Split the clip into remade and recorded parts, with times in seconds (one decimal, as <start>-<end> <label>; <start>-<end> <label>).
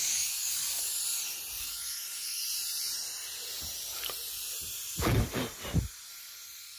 0.0-1.0 remade; 1.0-1.6 recorded; 1.6-2.4 remade; 2.4-6.8 recorded